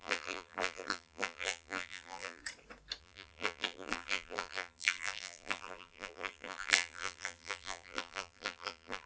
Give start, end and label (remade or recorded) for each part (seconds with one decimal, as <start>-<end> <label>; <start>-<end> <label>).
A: 0.0-2.4 remade; 2.4-3.0 recorded; 3.0-9.1 remade